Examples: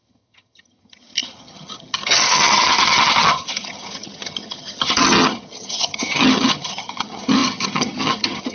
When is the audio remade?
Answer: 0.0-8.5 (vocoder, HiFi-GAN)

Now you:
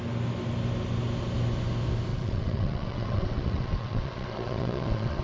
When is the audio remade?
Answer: 2.1-5.2 (vocoder, WaveNeXt)

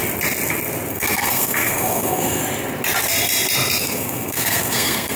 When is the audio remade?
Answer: 0.9-2.4 (codec, SNAC); 3.8-5.2